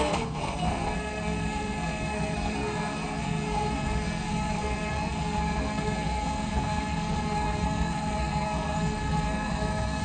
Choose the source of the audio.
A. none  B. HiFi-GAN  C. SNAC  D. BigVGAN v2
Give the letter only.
C